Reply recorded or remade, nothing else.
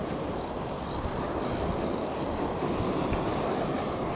recorded